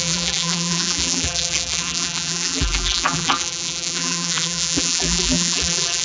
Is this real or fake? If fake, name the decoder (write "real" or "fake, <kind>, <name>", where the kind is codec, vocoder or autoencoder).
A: fake, vocoder, BigVGAN v2